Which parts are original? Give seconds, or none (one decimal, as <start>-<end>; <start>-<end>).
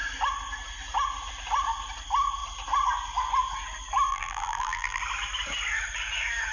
0.0-4.1; 5.0-6.5